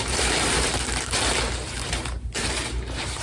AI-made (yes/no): yes